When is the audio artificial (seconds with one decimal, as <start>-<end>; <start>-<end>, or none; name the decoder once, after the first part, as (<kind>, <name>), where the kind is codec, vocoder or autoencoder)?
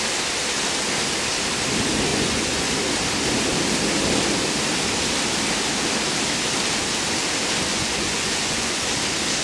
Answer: 2.1-2.7 (vocoder, Vocos); 7.7-8.9